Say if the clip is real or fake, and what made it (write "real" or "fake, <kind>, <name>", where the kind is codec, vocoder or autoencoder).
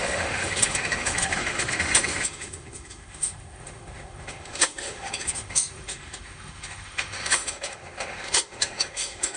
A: fake, autoencoder, DAC-VAE